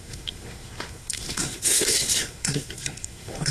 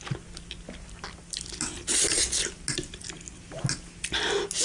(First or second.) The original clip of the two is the second